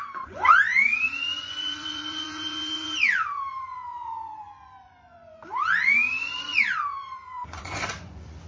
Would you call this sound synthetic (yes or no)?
yes